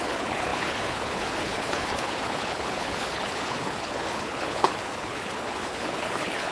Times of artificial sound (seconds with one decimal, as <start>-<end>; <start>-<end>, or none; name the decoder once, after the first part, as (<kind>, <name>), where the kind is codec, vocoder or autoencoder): 0.0-6.5 (codec, HILCodec)